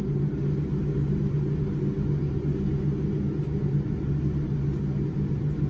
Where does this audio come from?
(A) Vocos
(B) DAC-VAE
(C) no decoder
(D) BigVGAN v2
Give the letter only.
C